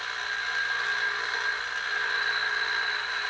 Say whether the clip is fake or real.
real